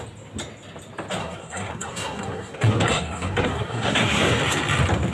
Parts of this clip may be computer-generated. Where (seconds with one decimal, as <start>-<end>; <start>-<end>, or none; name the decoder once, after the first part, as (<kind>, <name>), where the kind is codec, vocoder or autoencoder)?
1.2-4.3 (codec, SNAC)

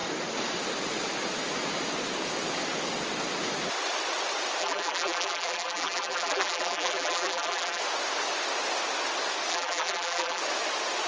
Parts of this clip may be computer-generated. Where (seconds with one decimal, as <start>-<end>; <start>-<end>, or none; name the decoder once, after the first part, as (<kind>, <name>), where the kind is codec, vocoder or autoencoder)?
4.6-7.8 (vocoder, BigVGAN v2); 9.5-10.4

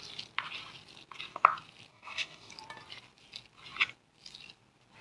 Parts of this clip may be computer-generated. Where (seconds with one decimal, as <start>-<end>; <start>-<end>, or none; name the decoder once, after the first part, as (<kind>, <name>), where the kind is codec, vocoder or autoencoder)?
1.9-2.5 (codec, DAC)